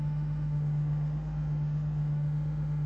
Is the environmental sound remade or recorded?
remade